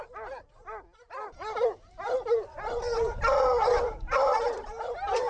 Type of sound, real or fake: real